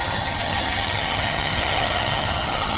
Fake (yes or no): yes